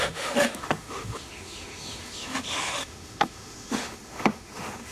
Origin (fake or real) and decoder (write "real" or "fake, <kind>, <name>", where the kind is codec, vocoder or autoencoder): fake, autoencoder, DAC-VAE